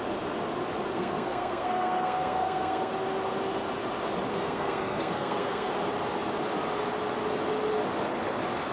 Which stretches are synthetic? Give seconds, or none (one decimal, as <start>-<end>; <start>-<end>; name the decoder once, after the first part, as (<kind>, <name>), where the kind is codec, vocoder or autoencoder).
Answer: 0.9-2.9 (codec, SNAC); 4.3-5.7